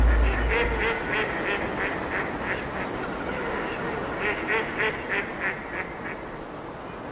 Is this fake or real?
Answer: real